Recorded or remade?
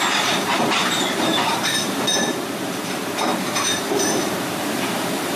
remade